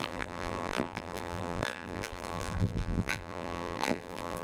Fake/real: fake